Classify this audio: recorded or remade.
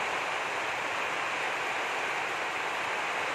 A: remade